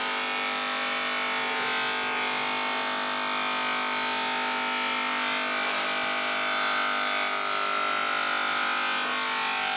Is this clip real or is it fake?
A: real